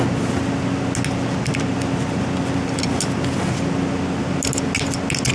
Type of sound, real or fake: real